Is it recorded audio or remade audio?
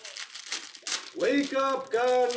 recorded